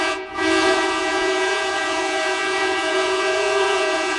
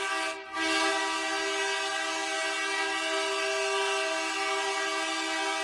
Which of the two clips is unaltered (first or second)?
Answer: second